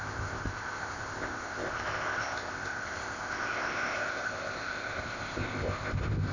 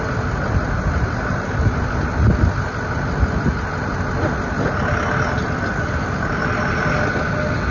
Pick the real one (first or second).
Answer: second